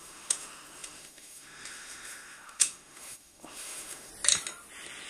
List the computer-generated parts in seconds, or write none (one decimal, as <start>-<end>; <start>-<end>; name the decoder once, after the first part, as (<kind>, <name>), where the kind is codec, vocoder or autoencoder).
0.0-4.1 (autoencoder, DAC-VAE)